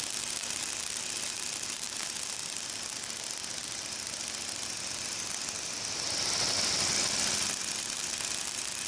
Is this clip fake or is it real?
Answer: real